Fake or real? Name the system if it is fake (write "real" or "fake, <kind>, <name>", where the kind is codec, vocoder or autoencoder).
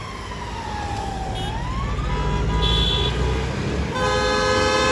real